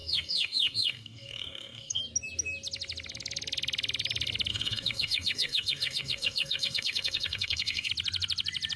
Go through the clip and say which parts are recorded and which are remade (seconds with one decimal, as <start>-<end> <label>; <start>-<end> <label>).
0.0-2.0 remade; 2.0-4.5 recorded; 4.5-7.9 remade; 7.9-8.8 recorded